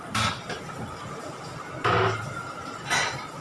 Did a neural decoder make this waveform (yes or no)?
no